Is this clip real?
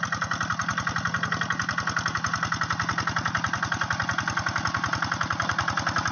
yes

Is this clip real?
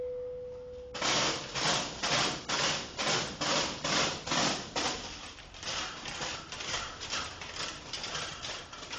yes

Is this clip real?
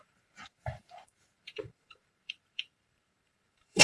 no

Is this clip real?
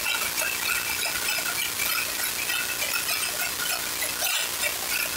yes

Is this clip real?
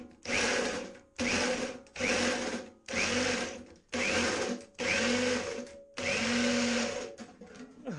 yes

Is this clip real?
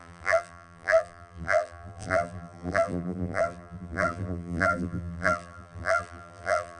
no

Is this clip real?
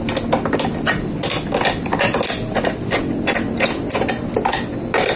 yes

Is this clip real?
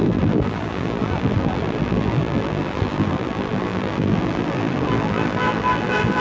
no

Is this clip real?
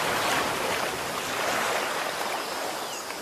yes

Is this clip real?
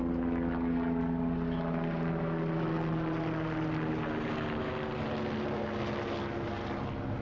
yes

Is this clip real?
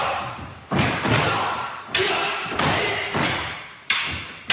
no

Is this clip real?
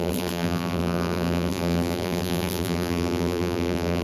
no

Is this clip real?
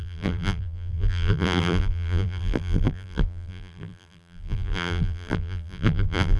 no